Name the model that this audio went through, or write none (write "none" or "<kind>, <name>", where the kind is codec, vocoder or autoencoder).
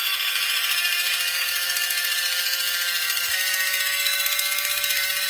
codec, DAC